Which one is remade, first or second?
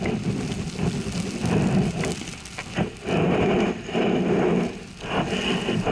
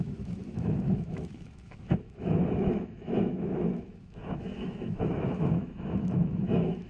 second